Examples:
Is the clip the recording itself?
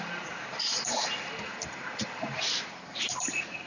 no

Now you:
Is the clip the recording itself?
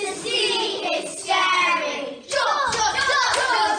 no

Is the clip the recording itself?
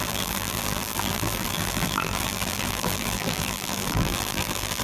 no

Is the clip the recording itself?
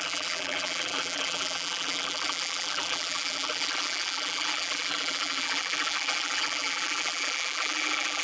no